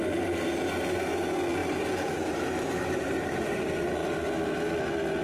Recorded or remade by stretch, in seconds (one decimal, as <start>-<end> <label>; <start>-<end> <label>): 0.0-1.6 recorded; 1.6-3.6 remade; 3.6-5.2 recorded